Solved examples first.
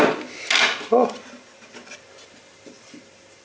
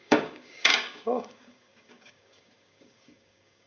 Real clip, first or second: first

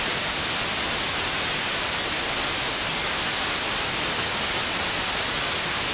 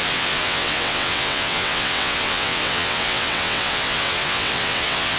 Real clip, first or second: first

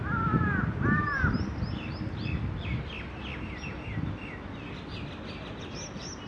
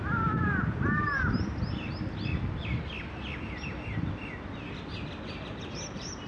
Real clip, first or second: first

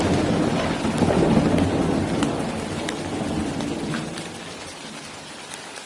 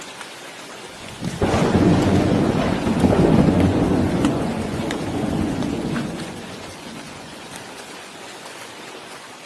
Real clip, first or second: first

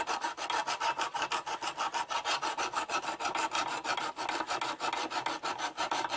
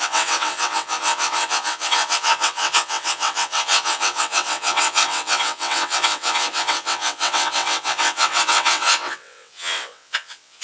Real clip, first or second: first